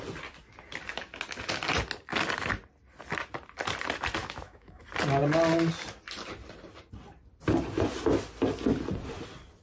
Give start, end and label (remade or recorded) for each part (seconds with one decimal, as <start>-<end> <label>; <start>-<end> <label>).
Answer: 0.0-4.2 recorded; 4.2-4.8 remade; 4.8-9.6 recorded